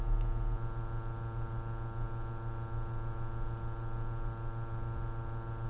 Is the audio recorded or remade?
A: recorded